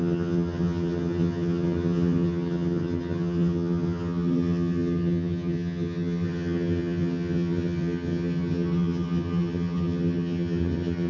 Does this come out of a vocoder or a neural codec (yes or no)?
yes